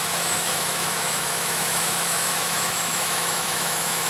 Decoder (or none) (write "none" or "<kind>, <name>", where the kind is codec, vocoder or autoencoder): autoencoder, DAC-VAE